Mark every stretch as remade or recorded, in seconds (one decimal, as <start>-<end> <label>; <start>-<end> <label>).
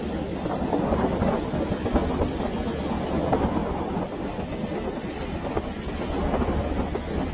0.0-7.3 recorded